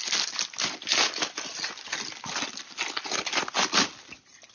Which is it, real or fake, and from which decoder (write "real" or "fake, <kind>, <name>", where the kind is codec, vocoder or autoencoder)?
real